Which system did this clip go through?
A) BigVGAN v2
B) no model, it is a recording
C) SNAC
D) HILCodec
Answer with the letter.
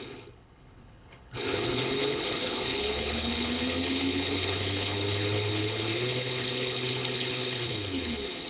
D